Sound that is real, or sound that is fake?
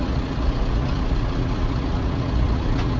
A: fake